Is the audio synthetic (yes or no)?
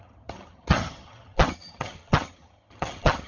yes